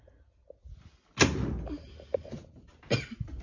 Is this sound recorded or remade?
recorded